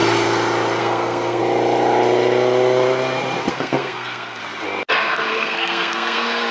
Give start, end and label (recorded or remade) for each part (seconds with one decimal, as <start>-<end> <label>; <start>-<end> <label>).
0.0-0.8 recorded; 0.8-1.4 remade; 1.4-3.5 recorded; 3.5-4.4 remade; 4.4-4.9 recorded; 4.9-6.5 remade